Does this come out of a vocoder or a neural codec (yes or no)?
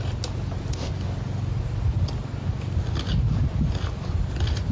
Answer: no